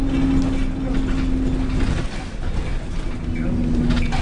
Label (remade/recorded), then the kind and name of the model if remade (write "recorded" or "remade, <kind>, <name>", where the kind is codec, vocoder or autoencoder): recorded